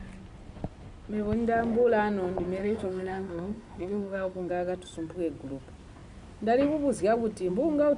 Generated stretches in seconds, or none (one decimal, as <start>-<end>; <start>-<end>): 2.6-4.5